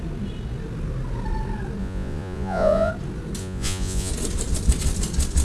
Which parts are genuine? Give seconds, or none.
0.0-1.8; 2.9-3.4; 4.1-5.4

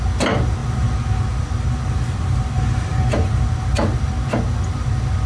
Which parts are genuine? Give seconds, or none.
0.0-0.6; 3.7-5.3

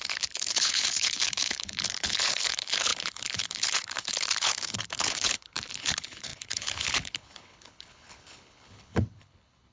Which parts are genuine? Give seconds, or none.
none